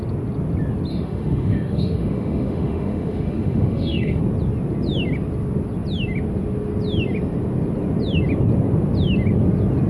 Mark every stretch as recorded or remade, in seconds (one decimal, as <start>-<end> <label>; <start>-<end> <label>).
0.0-0.9 recorded; 0.9-4.2 remade; 4.2-9.9 recorded